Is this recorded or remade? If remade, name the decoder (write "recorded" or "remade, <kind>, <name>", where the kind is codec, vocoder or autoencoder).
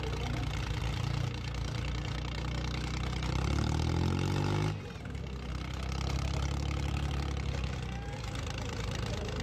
recorded